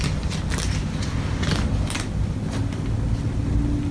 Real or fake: real